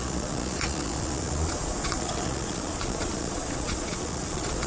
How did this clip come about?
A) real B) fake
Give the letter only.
B